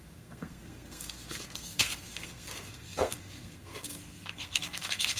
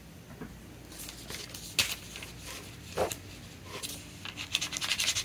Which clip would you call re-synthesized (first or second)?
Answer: first